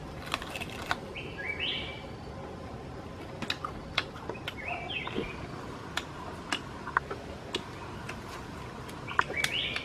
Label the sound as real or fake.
real